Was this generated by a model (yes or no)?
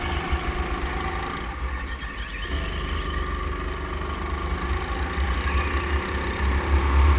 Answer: no